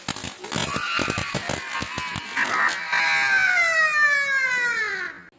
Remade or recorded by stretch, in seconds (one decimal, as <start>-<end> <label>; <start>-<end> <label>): 0.0-5.4 recorded